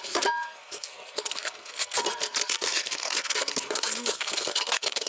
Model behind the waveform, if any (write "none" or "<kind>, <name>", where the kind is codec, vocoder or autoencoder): codec, SNAC